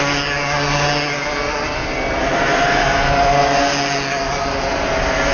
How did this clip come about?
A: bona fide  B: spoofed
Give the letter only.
A